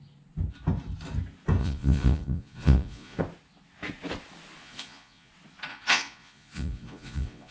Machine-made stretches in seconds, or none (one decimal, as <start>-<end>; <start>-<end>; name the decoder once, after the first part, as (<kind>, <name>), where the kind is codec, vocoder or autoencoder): 1.6-3.2 (vocoder, Vocos); 4.6-5.3; 5.7-7.5